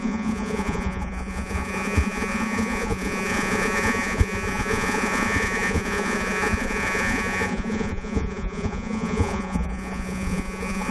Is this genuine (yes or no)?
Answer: no